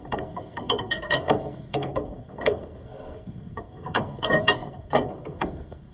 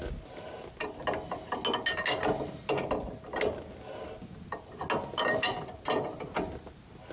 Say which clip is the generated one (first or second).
first